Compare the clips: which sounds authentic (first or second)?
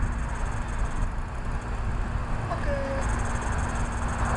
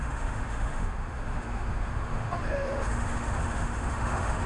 first